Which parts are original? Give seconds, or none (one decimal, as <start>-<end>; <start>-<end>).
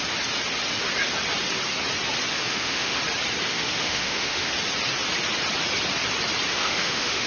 0.0-2.3; 3.0-3.5; 4.5-6.5